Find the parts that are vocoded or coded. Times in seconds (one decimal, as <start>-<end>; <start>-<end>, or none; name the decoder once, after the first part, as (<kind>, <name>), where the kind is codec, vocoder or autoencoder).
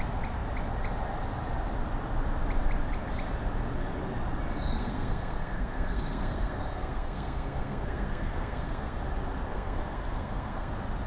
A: 4.7-9.0 (codec, SNAC); 9.5-10.7